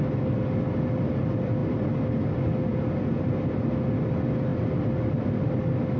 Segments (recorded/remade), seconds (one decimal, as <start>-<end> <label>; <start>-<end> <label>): 0.0-2.7 recorded; 2.7-3.4 remade; 3.4-6.0 recorded